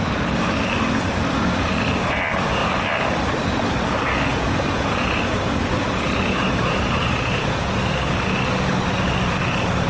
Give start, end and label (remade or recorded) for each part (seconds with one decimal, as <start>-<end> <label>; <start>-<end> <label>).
0.0-4.3 recorded; 4.3-7.7 remade; 7.7-9.9 recorded